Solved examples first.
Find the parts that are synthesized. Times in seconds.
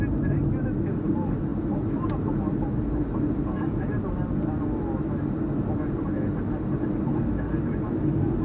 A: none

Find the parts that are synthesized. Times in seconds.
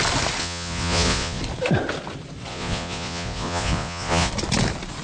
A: 0.4-1.4 (vocoder, Vocos); 2.5-4.3